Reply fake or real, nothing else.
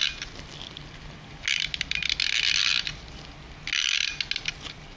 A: real